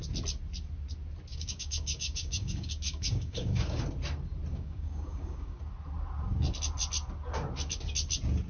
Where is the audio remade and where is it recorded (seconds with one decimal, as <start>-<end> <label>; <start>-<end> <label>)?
0.0-1.3 recorded; 1.3-3.8 remade; 3.8-4.5 recorded; 4.5-5.6 remade; 5.6-8.5 recorded